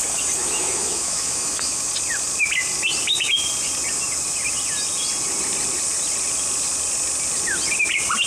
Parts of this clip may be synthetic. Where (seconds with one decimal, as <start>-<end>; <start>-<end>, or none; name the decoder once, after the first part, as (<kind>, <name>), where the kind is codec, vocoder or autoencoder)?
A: 0.4-1.9 (autoencoder, DAC-VAE)